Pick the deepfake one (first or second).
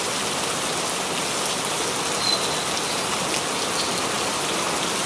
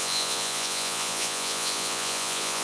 second